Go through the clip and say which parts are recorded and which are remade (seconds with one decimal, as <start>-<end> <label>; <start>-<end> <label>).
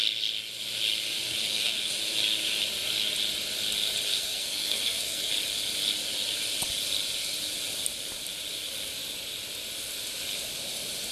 0.0-1.3 recorded; 1.3-1.9 remade; 1.9-4.1 recorded; 4.1-5.3 remade; 5.3-11.1 recorded